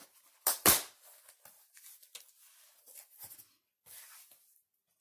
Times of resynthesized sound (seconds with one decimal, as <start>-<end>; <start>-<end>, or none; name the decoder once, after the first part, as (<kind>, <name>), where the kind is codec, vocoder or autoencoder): none